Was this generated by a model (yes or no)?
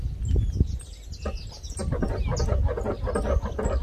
no